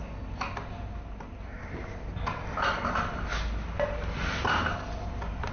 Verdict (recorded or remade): recorded